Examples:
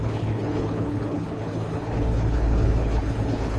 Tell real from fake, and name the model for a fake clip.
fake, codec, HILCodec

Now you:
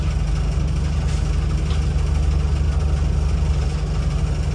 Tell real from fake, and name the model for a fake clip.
real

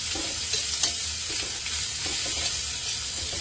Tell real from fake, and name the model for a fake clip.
real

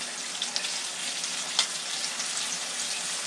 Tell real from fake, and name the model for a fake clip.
real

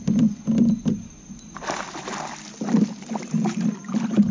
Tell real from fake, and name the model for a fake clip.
real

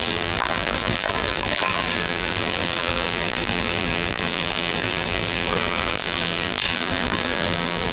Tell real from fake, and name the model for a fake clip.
fake, vocoder, BigVGAN v2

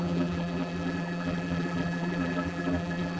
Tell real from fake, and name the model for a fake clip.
fake, vocoder, BigVGAN v2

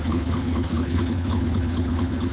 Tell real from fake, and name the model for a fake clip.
fake, codec, HILCodec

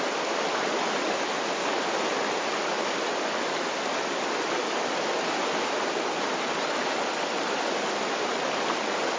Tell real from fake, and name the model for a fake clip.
real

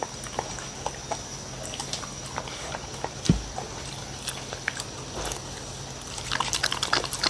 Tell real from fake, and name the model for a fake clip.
real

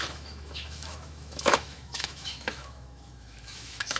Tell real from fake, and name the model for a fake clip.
fake, autoencoder, DAC-VAE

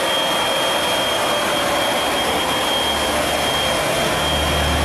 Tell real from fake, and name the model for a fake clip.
real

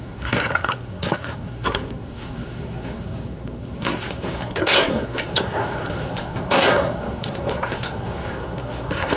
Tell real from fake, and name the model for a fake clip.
fake, codec, SNAC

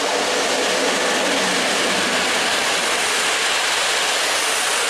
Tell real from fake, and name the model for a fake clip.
real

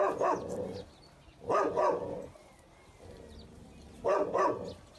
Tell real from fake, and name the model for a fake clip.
real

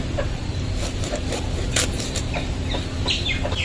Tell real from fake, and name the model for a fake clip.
real